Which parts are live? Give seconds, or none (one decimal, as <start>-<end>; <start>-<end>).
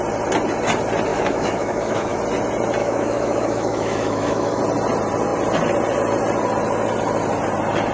0.0-1.1; 2.2-2.8; 4.6-7.9